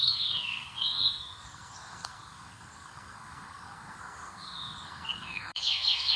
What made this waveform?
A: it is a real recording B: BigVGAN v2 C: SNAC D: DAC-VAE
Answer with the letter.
C